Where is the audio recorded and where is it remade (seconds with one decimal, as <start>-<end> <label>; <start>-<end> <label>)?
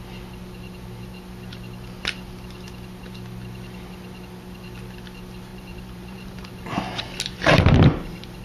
0.0-5.5 recorded; 5.5-7.0 remade; 7.0-8.4 recorded